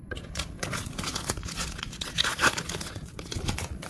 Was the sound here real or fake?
fake